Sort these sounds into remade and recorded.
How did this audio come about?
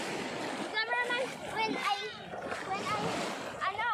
recorded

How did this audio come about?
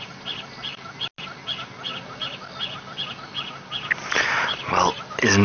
recorded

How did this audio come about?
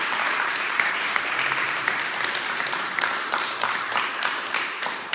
remade